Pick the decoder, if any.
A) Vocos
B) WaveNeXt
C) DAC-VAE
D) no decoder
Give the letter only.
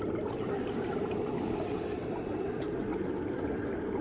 D